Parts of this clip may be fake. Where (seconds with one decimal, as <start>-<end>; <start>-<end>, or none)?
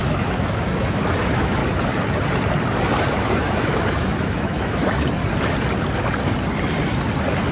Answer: 0.0-1.6; 3.1-5.2